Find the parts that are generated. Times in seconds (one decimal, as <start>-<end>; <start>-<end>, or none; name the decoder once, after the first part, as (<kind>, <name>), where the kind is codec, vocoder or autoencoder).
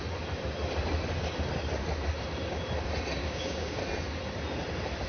3.2-3.8 (codec, DAC)